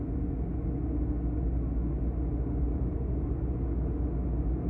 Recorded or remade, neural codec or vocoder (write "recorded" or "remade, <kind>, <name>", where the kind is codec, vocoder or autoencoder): recorded